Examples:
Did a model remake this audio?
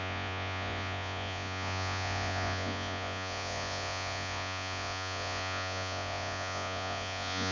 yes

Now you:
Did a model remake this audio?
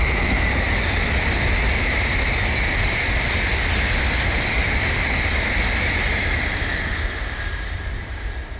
no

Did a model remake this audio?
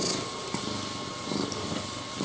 no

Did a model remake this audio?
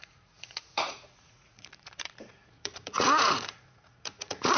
yes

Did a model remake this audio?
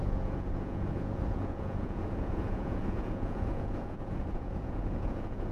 yes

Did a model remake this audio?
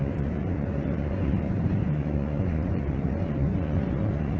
yes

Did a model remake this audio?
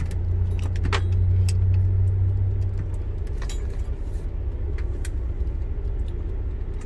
no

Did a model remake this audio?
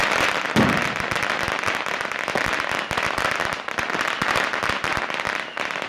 no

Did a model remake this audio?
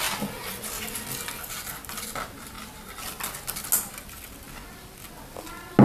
no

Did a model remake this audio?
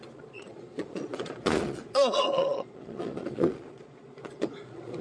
yes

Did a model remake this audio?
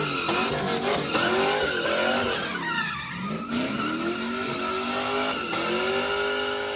no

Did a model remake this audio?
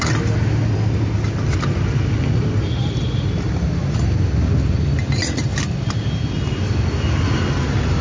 no